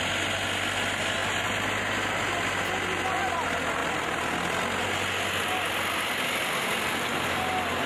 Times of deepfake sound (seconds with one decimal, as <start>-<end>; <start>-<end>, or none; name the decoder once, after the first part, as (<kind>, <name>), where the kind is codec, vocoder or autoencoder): none